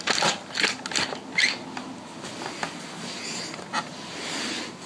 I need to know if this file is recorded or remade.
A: recorded